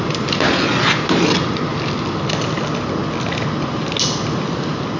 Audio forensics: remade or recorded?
recorded